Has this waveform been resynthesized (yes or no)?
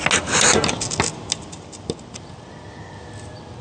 no